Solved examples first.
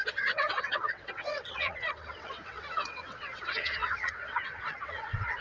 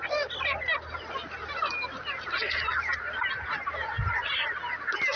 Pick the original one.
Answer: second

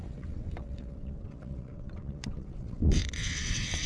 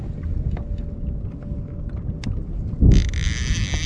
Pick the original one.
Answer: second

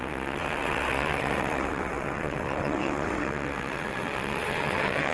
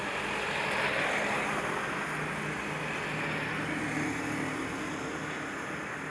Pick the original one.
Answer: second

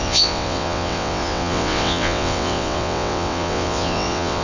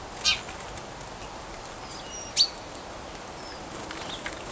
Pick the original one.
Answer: second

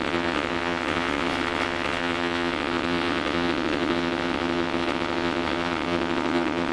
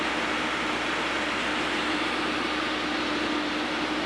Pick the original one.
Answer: second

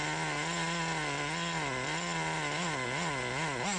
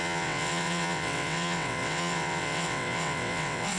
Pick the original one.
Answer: first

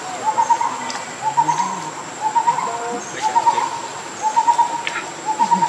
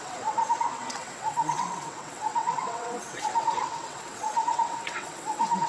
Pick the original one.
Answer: first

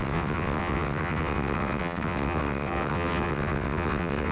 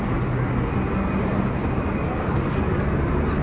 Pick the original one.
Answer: second